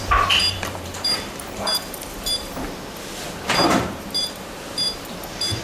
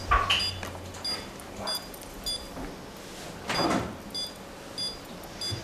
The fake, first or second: first